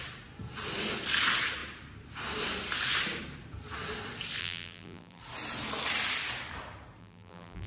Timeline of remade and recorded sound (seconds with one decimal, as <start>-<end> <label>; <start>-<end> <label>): 0.0-4.4 recorded; 4.4-5.2 remade; 5.2-7.0 recorded; 7.0-7.7 remade